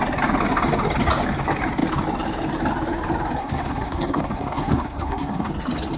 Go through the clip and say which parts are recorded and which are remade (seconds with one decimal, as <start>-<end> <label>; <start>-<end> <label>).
0.0-3.4 recorded; 3.4-5.5 remade; 5.5-6.0 recorded